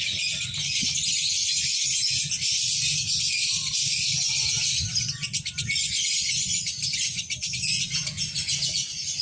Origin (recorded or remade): recorded